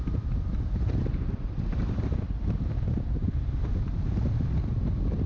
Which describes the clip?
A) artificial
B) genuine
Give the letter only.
A